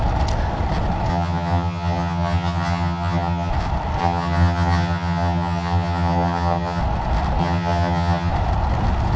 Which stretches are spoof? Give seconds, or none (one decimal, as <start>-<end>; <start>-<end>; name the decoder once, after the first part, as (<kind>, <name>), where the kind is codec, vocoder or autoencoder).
1.1-3.5 (vocoder, HiFi-GAN); 4.0-6.8; 7.4-8.3